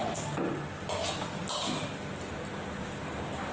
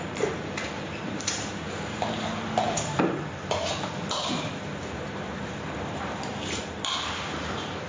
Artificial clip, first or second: second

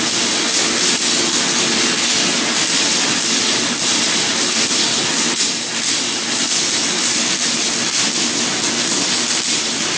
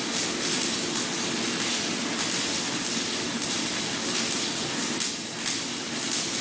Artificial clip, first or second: second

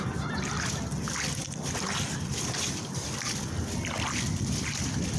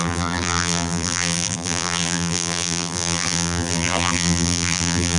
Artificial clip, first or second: second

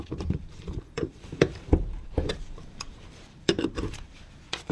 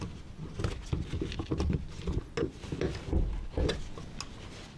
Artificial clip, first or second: first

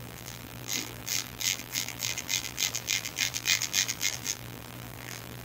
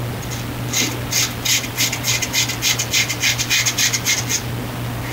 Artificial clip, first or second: first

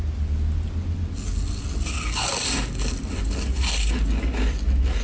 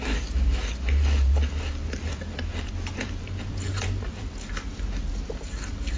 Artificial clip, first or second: second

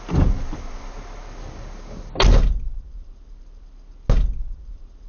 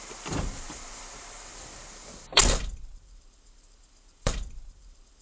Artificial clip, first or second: second